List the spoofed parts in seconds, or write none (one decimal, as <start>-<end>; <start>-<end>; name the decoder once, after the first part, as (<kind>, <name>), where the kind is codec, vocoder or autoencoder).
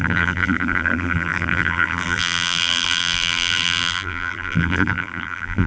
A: 0.0-5.7 (vocoder, BigVGAN v2)